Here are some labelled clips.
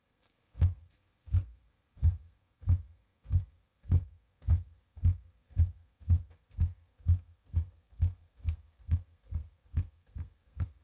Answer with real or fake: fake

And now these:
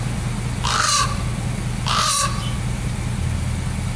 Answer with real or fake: real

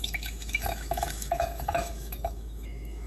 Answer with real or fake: fake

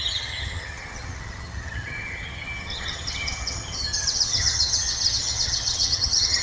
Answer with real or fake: fake